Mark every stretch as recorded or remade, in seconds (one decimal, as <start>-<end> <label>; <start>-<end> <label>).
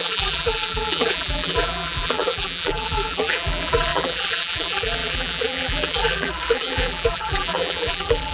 0.0-8.3 remade